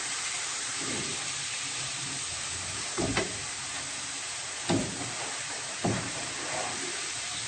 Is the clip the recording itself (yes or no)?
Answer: no